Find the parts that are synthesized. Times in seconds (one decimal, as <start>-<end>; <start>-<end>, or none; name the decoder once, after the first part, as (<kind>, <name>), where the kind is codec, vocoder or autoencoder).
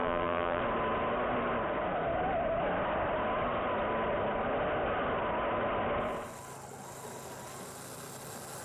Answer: 0.0-0.6 (vocoder, BigVGAN v2)